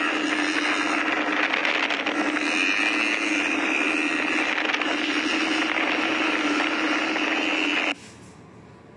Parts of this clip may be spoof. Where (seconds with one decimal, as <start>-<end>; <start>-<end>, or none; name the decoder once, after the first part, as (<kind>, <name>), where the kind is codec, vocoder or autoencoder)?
none